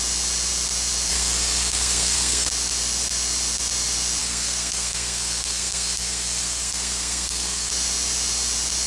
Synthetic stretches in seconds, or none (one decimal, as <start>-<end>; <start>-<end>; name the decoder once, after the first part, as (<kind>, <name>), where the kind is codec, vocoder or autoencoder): 1.1-2.5 (codec, SNAC); 4.2-7.7